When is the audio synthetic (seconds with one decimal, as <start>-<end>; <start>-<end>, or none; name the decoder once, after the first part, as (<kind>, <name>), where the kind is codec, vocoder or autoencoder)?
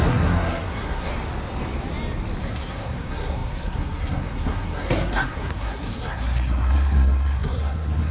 0.0-1.1 (codec, SNAC); 2.4-8.1